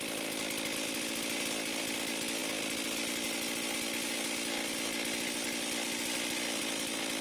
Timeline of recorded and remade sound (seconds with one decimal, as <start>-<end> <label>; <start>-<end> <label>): 0.0-7.2 recorded